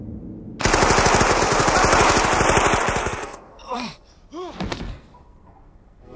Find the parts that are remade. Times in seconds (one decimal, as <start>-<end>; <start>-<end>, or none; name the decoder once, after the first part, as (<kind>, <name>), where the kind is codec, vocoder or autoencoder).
3.0-4.1 (codec, SNAC); 4.7-6.2